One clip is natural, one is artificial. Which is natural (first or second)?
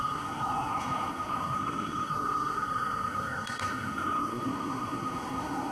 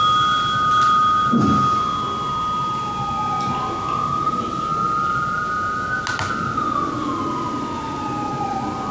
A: second